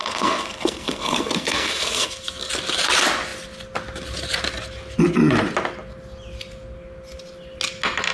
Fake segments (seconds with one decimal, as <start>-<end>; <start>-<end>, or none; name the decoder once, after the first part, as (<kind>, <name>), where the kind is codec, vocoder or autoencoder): 0.0-2.5 (codec, SNAC)